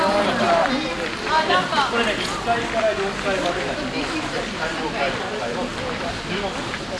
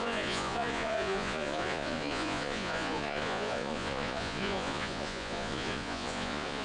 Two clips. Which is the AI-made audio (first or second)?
second